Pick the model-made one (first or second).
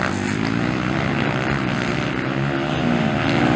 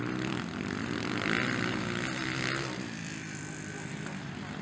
second